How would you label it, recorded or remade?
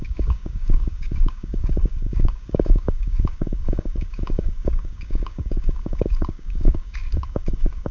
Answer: remade